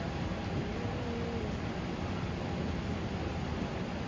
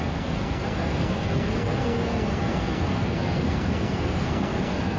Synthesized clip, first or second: second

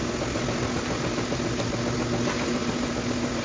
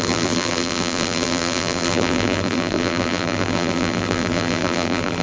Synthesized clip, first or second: second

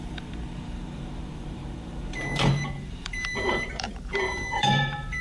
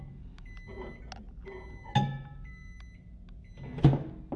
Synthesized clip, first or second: first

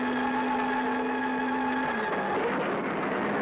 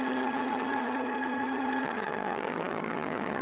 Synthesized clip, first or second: second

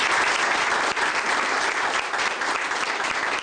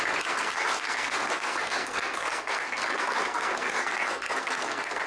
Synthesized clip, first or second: second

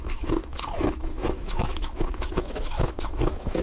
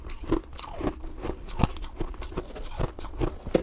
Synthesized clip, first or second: first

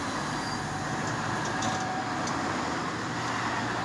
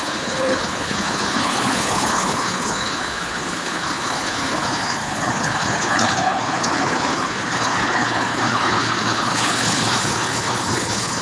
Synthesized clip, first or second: second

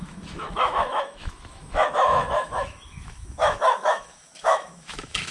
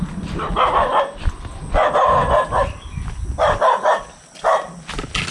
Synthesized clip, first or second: first